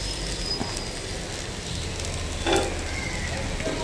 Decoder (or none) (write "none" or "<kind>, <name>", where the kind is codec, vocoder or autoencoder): none